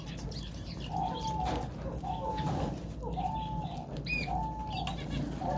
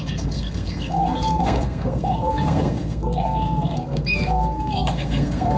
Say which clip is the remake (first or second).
second